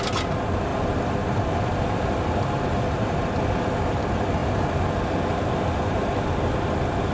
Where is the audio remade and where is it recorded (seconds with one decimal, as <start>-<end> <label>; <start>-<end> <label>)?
0.0-7.1 recorded